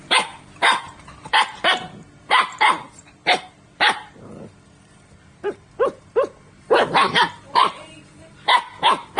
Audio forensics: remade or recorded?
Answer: remade